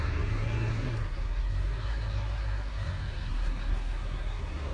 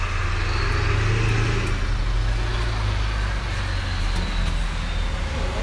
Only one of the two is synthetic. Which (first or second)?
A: first